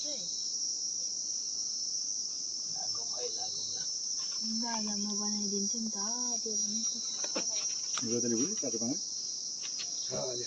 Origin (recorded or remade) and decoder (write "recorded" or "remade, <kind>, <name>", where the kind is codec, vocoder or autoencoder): recorded